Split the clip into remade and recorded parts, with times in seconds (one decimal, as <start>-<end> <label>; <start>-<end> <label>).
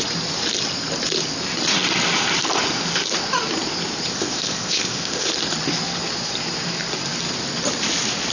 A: 0.0-4.1 recorded; 4.1-5.3 remade; 5.3-8.3 recorded